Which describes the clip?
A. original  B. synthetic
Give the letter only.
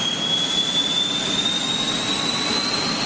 A